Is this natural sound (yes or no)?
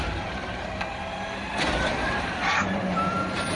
no